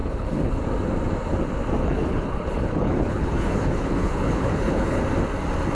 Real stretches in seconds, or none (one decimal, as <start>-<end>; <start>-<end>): 0.6-1.8; 5.0-5.7